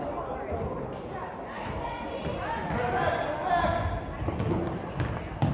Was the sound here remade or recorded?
recorded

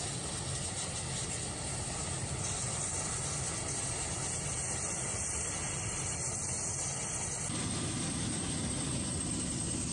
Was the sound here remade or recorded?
recorded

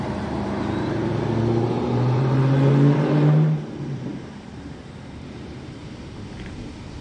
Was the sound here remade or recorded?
remade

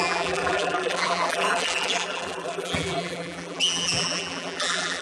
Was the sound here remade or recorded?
remade